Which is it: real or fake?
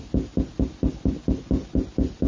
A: real